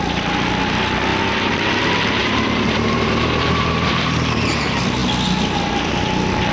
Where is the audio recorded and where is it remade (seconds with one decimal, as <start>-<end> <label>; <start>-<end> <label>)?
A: 0.0-2.2 recorded; 2.2-4.5 remade; 4.5-6.5 recorded